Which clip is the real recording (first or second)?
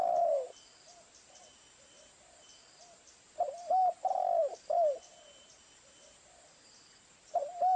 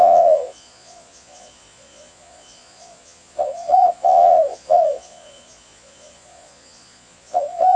first